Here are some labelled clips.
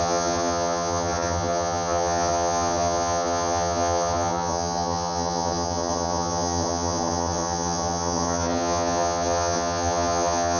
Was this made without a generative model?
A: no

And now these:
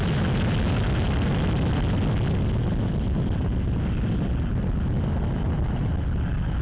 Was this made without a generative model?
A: yes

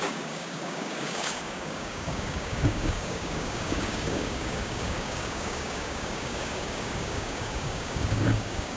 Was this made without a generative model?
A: no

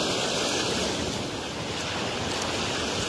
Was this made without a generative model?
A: yes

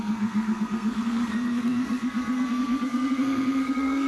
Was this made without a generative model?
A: no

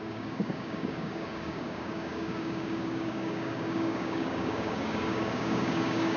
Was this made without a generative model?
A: no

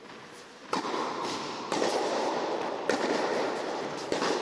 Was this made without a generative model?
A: no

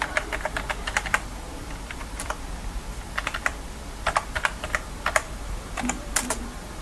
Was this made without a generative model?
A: no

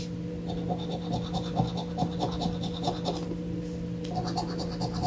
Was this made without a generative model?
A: yes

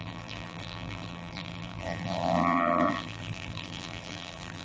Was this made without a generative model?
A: no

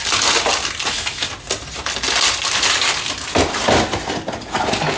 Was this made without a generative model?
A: yes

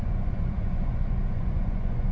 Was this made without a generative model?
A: no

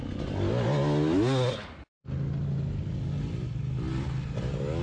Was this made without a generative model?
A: yes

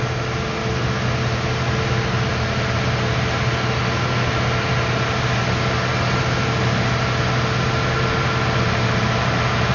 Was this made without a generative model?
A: yes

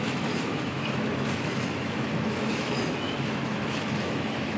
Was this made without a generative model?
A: no